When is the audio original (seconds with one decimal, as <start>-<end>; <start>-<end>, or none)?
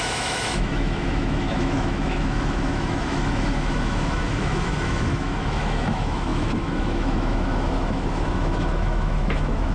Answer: none